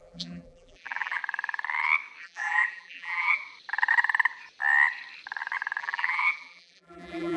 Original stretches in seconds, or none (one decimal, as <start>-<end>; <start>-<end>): 1.2-2.2; 3.4-5.8